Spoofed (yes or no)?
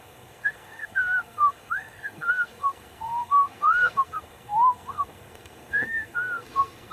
yes